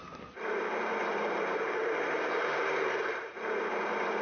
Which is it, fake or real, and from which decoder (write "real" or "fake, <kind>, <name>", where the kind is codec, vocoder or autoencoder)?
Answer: fake, vocoder, BigVGAN v2